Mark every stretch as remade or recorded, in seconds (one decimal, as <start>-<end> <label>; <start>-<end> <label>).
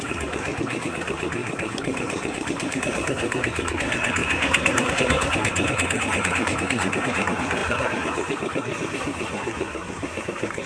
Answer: 0.0-10.7 remade